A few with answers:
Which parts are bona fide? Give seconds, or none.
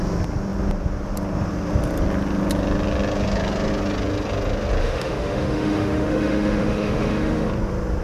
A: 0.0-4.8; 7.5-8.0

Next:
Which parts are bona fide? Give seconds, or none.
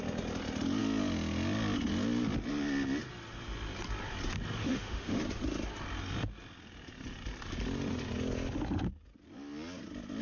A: 0.0-4.6; 5.2-10.2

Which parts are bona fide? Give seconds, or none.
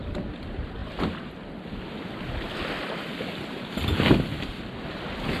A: 0.0-5.4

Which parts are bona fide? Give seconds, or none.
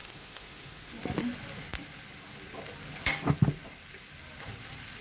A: 0.9-5.0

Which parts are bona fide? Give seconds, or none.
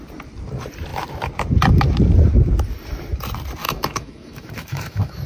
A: 0.0-3.6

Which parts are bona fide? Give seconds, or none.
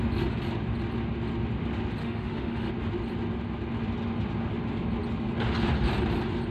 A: 0.0-2.0; 2.7-6.5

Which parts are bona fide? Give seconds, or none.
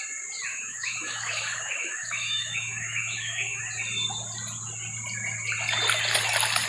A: 0.0-0.5; 3.6-6.7